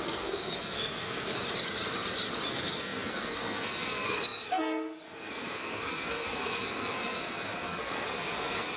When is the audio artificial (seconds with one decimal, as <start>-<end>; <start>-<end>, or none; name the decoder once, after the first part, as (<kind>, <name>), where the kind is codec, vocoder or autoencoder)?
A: 0.0-1.4 (codec, SNAC); 2.5-8.8